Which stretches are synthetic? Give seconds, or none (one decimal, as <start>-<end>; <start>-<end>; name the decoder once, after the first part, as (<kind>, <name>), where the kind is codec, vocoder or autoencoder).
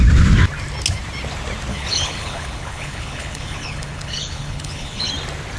1.7-5.1 (codec, HILCodec)